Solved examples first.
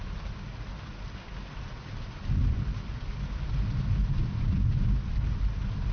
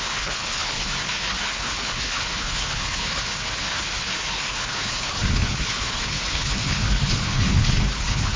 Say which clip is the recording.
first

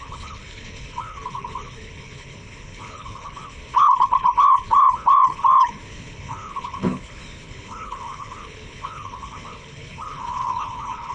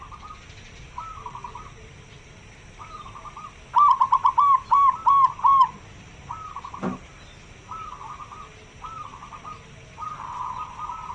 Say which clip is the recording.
second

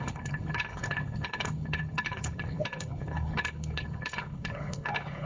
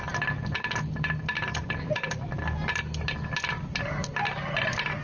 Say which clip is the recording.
second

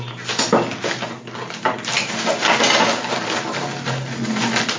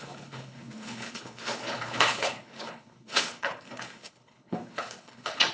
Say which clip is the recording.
first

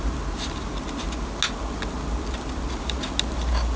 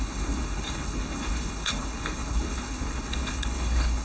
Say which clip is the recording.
first